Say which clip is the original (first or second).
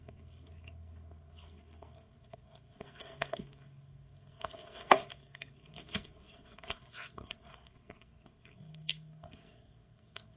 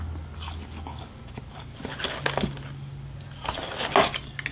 second